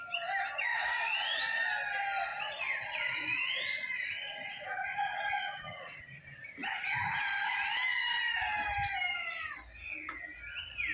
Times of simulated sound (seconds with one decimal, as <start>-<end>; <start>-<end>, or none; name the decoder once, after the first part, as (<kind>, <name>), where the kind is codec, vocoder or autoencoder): 0.7-1.4 (vocoder, Vocos); 2.3-6.0